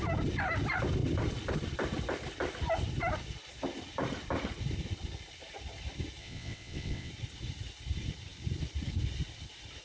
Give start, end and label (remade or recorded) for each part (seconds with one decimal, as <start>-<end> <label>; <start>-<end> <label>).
0.0-6.2 recorded; 6.2-7.1 remade; 7.1-9.8 recorded